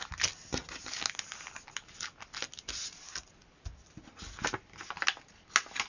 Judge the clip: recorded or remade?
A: recorded